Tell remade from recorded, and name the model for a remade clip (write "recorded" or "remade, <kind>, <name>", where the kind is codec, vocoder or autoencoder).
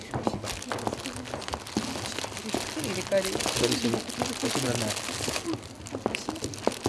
recorded